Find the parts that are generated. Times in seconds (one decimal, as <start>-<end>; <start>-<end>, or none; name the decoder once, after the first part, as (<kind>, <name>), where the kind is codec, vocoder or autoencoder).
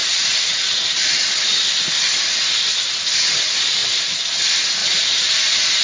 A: 0.0-1.2 (vocoder, BigVGAN v2); 4.8-5.8